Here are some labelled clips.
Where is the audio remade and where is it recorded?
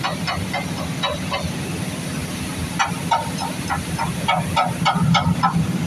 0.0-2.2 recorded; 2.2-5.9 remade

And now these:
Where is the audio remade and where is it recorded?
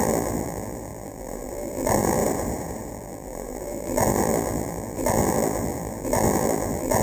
0.0-2.2 remade; 2.2-2.9 recorded; 2.9-7.0 remade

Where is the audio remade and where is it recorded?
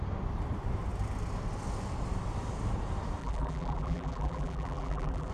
0.0-3.2 recorded; 3.2-5.3 remade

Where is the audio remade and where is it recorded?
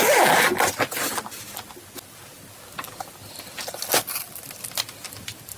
0.0-3.2 recorded; 3.2-4.7 remade; 4.7-5.6 recorded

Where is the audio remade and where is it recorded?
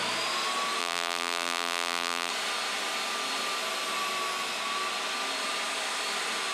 0.0-0.8 recorded; 0.8-2.3 remade; 2.3-6.5 recorded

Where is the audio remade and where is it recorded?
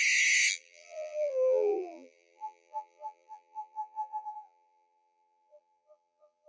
0.0-0.5 recorded; 0.5-6.5 remade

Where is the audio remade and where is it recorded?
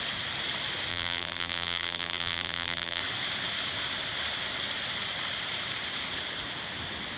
0.0-0.9 recorded; 0.9-3.0 remade; 3.0-7.2 recorded